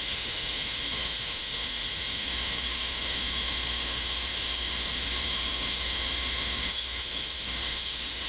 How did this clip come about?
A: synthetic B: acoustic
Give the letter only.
A